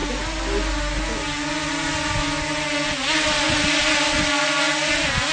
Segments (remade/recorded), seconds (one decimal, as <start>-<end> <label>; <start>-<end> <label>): 0.0-5.3 recorded